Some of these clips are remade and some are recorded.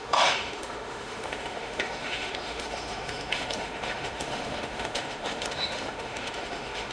remade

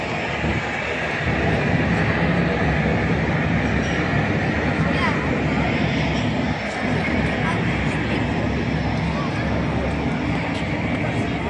recorded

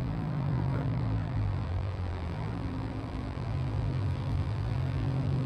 remade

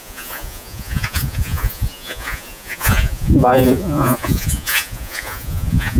remade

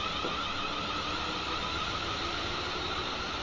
recorded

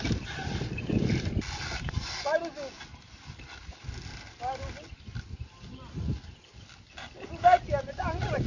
recorded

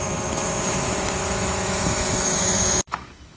remade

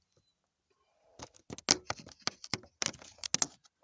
recorded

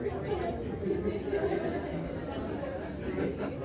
recorded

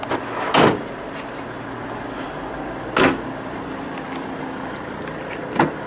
recorded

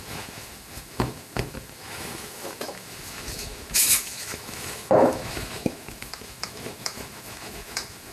remade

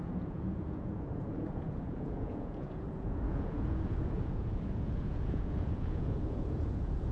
remade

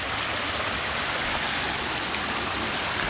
recorded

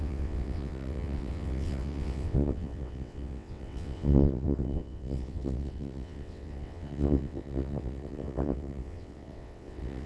remade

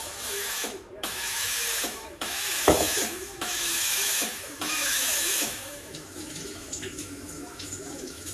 remade